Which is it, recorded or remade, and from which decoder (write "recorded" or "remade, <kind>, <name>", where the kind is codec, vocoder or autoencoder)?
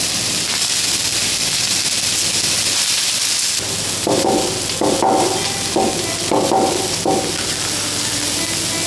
recorded